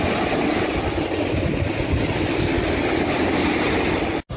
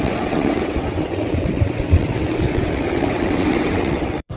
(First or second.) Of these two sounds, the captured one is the first